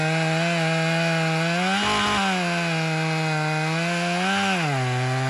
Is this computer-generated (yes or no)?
no